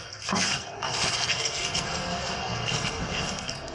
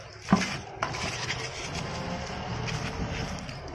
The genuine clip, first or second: second